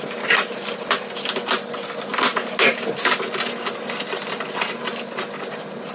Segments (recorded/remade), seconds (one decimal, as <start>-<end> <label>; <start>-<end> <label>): 0.0-5.9 recorded

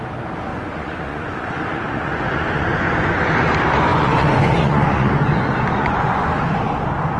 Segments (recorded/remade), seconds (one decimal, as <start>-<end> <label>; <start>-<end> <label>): 0.0-0.5 recorded; 0.5-3.2 remade; 3.2-3.9 recorded; 3.9-6.3 remade; 6.3-7.2 recorded

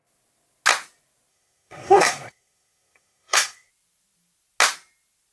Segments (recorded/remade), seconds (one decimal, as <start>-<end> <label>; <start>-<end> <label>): 0.0-1.3 recorded; 1.3-3.7 remade; 3.7-5.3 recorded

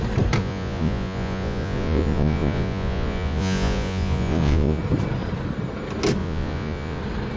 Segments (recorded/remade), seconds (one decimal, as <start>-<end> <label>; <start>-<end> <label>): 0.0-0.4 recorded; 0.4-4.8 remade; 4.8-6.2 recorded; 6.2-7.0 remade; 7.0-7.4 recorded

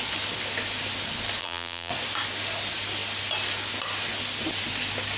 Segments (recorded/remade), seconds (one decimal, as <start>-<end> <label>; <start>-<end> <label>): 0.0-1.4 recorded; 1.4-1.9 remade; 1.9-5.2 recorded

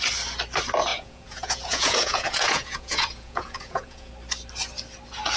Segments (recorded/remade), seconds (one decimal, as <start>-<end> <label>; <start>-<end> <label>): 0.0-0.9 recorded; 0.9-4.1 remade; 4.1-5.4 recorded